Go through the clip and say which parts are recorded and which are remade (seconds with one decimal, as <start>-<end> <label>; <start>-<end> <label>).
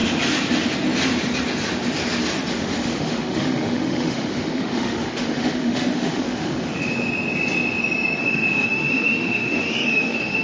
0.0-2.5 recorded; 2.5-6.8 remade; 6.8-8.2 recorded; 8.2-10.4 remade